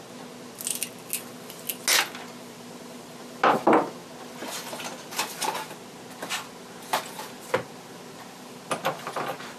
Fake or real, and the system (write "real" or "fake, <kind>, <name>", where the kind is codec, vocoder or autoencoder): real